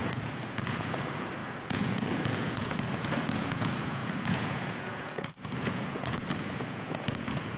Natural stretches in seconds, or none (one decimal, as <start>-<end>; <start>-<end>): none